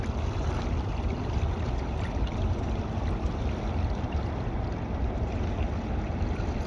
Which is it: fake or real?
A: fake